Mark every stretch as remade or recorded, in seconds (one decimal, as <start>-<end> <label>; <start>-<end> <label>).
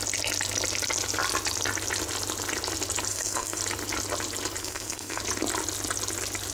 0.0-3.1 recorded; 3.1-3.6 remade; 3.6-4.6 recorded; 4.6-5.2 remade; 5.2-6.5 recorded